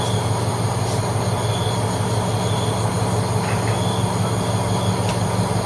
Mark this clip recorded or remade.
recorded